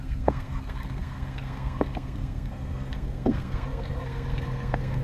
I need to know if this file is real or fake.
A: fake